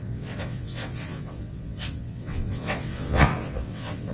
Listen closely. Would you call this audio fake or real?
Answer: fake